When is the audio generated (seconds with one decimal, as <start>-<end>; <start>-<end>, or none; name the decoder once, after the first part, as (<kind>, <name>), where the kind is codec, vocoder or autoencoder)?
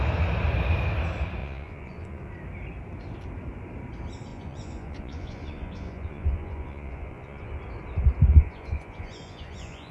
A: 1.4-2.3 (vocoder, Vocos); 4.3-7.6; 8.3-9.9